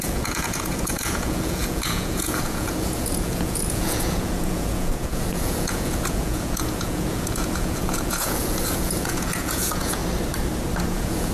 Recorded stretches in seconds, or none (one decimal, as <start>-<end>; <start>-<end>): 10.0-10.9